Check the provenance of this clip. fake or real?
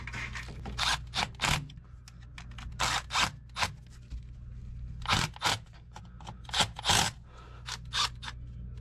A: real